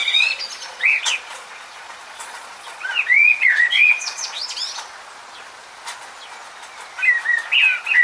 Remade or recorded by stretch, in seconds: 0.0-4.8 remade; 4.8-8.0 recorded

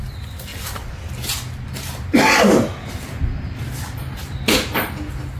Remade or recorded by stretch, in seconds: 0.0-5.4 recorded

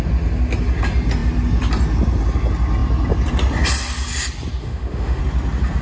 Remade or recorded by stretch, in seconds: 0.0-4.6 recorded; 4.6-5.2 remade; 5.2-5.8 recorded

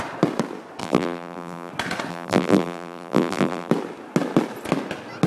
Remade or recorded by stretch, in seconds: 0.0-0.8 recorded; 0.8-1.7 remade; 1.7-2.1 recorded; 2.1-3.7 remade; 3.7-5.3 recorded

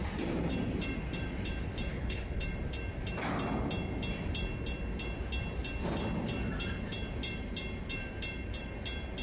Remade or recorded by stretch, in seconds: 0.0-1.9 recorded; 1.9-2.4 remade; 2.4-9.2 recorded

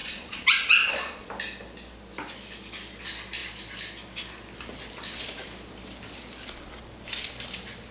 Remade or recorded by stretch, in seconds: 0.0-1.3 remade; 1.3-7.9 recorded

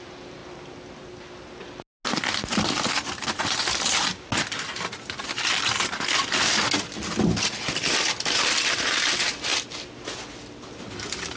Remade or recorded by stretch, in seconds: 0.0-11.4 recorded

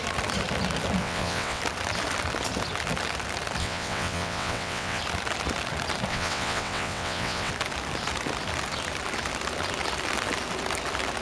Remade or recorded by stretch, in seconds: 0.0-1.0 recorded; 1.0-1.6 remade; 1.6-3.6 recorded; 3.6-5.0 remade; 5.0-6.1 recorded; 6.1-7.5 remade; 7.5-11.2 recorded